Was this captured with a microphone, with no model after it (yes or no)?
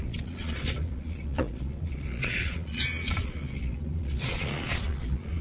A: no